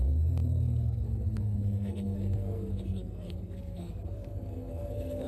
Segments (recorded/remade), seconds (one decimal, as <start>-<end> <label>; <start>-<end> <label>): 0.0-5.3 remade